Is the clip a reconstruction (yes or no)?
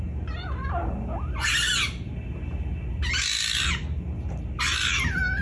no